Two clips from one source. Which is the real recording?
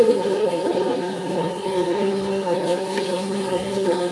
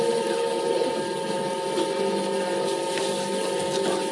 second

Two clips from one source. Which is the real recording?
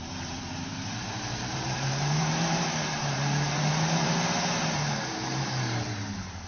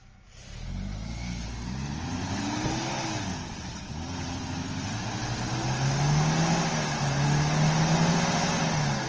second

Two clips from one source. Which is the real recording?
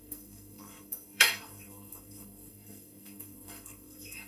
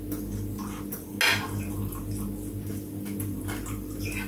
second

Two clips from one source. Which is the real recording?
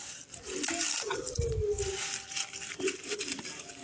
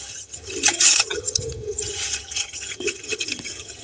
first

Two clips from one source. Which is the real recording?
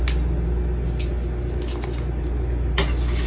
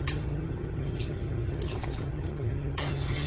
first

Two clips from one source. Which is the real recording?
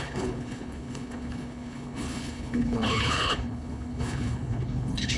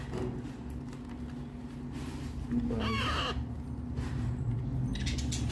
second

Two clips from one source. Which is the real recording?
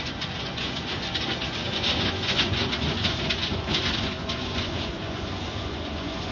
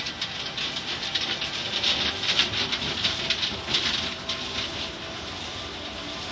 second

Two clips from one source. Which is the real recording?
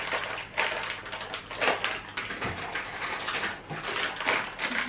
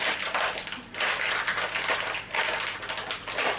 first